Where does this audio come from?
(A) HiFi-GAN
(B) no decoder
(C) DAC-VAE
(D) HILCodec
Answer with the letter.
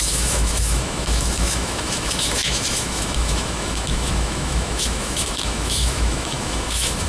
C